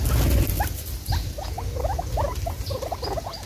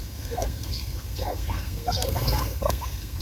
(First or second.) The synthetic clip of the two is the second